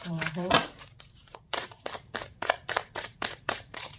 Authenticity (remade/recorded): remade